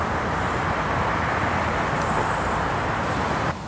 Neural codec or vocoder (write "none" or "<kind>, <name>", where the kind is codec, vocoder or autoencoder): vocoder, BigVGAN v2